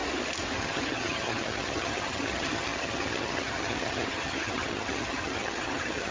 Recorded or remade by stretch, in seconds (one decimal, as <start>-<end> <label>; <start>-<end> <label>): 0.0-0.6 recorded; 0.6-6.1 remade